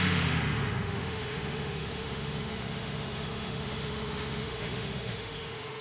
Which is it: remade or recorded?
remade